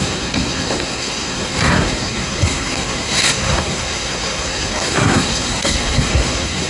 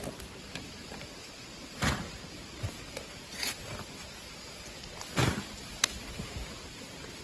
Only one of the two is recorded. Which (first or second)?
second